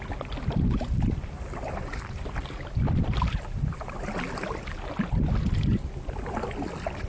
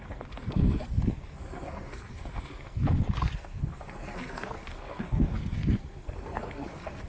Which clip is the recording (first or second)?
first